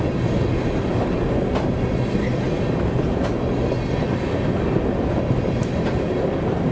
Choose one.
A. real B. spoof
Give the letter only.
A